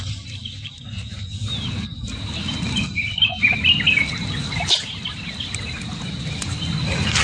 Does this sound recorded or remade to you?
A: recorded